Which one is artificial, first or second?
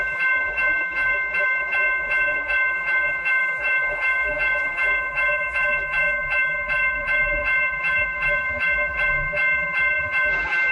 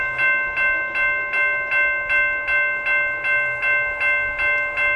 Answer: first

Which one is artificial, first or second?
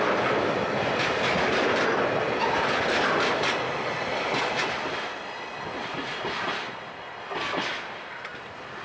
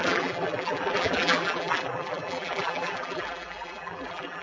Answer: second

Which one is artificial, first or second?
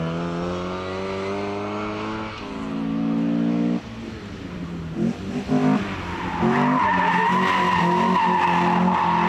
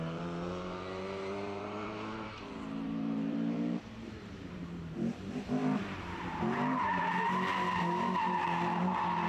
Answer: second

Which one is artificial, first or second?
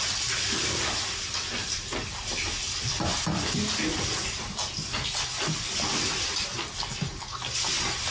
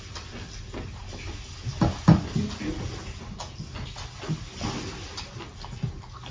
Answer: first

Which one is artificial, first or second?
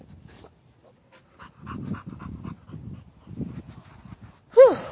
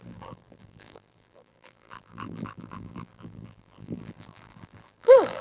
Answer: second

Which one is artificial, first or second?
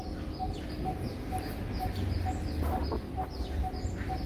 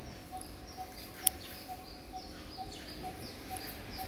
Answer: second